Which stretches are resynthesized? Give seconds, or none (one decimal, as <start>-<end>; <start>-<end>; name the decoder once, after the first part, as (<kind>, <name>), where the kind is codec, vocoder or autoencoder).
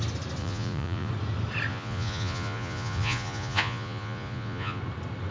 0.4-1.1 (vocoder, Vocos); 1.7-4.8